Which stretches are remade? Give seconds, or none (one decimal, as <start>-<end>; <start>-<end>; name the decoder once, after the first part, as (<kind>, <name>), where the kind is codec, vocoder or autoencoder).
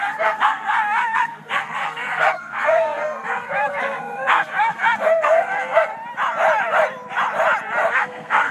0.0-5.9 (codec, SNAC); 7.9-8.5